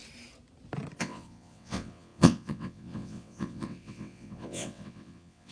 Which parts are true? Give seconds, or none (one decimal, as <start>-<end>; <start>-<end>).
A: 0.0-1.0